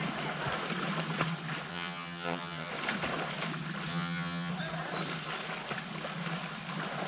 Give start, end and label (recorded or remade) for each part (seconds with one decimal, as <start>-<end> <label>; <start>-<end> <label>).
0.0-1.7 recorded; 1.7-2.7 remade; 2.7-3.9 recorded; 3.9-4.5 remade; 4.5-7.1 recorded